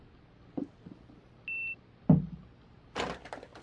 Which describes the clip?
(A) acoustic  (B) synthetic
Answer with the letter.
A